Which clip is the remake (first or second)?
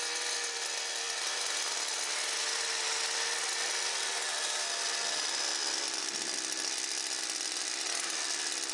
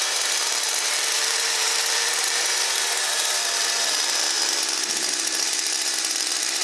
second